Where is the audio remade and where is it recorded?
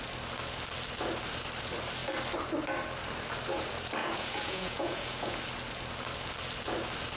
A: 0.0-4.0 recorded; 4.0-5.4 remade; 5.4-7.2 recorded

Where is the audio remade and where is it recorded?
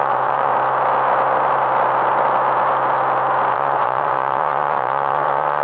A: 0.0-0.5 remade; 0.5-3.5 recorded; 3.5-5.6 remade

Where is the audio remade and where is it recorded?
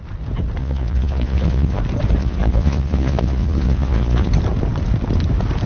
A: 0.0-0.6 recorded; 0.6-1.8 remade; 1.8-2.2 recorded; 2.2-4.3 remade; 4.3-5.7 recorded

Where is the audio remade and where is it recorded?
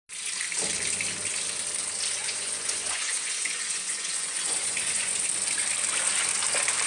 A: 0.0-2.2 recorded; 2.2-5.3 remade; 5.3-6.9 recorded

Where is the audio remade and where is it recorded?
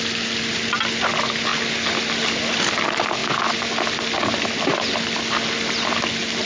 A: 0.0-6.4 recorded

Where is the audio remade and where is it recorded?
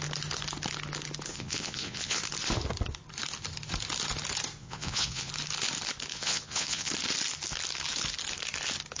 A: 0.0-1.3 recorded; 1.3-2.2 remade; 2.2-4.6 recorded; 4.6-5.3 remade; 5.3-6.1 recorded; 6.1-6.9 remade; 6.9-9.0 recorded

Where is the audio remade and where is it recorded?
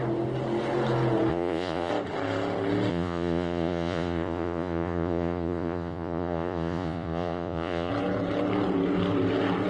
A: 0.0-1.3 recorded; 1.3-1.9 remade; 1.9-2.9 recorded; 2.9-7.9 remade; 7.9-9.7 recorded